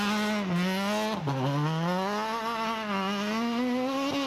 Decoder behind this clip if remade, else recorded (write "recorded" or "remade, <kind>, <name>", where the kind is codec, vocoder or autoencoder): recorded